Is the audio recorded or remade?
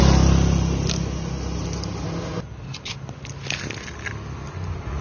recorded